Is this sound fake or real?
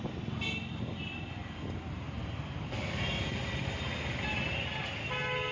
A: real